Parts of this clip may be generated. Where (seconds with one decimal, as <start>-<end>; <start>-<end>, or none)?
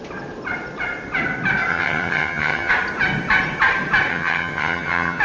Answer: 1.7-2.7; 4.1-5.2